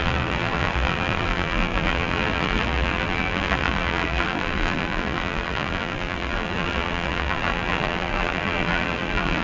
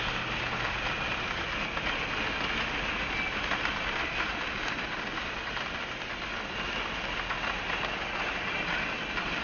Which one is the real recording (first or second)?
second